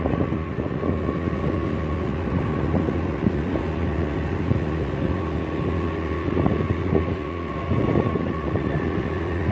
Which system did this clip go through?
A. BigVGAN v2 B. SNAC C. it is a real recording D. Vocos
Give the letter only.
D